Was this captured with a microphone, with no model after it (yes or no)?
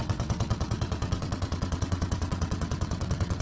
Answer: no